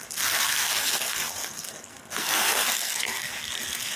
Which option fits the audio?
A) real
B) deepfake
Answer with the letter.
B